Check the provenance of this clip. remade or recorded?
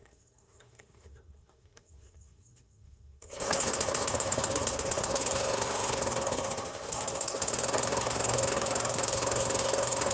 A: remade